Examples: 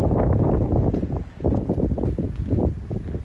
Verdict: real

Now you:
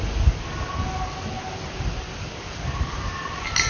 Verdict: real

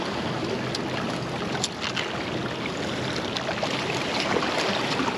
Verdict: real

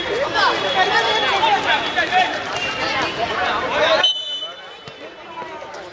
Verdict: real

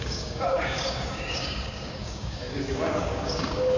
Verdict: fake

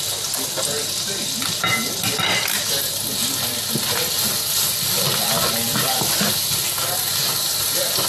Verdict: real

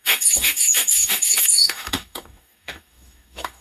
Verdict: fake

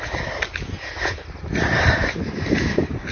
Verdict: real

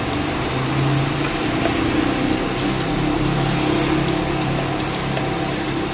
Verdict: real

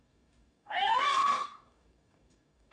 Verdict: fake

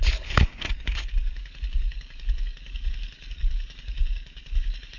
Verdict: fake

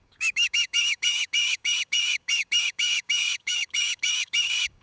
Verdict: fake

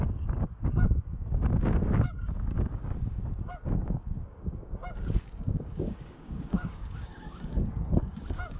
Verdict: fake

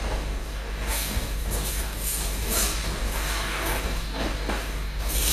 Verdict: fake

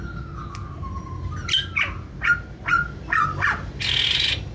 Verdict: real